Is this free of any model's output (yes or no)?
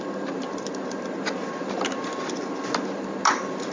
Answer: yes